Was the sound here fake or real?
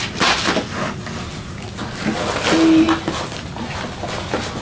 real